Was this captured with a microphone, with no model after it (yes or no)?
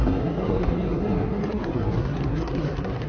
no